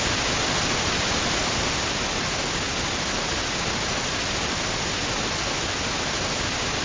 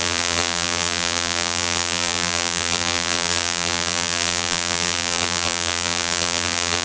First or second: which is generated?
second